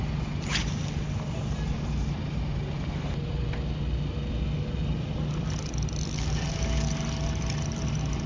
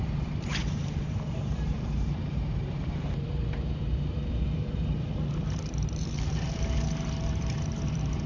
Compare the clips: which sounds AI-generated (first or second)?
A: second